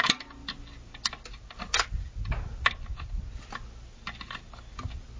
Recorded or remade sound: recorded